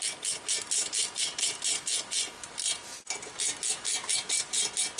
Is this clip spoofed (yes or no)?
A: no